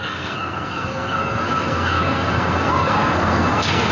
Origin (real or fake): fake